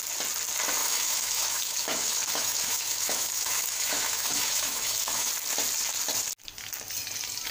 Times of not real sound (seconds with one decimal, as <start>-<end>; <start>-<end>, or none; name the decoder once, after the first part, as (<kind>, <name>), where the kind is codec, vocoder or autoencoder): 0.8-5.3 (autoencoder, DAC-VAE)